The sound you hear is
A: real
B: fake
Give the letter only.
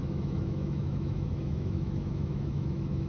B